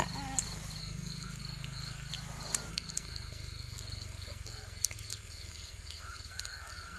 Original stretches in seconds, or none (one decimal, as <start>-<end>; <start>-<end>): 0.0-0.8; 2.1-2.7